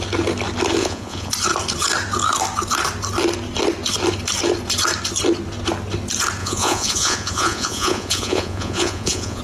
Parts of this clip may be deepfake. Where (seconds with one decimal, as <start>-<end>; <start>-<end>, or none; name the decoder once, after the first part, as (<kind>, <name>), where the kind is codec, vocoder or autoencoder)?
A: 0.8-1.3 (vocoder, Vocos); 6.4-9.4